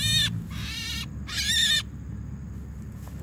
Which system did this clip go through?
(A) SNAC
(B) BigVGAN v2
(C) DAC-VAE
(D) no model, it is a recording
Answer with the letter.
D